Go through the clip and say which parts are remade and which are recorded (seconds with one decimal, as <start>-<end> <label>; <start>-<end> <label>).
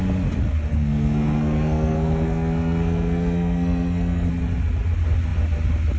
0.0-0.7 recorded; 0.7-4.3 remade; 4.3-6.0 recorded